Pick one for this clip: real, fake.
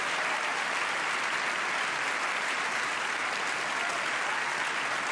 real